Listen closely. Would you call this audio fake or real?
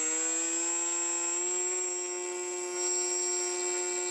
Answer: real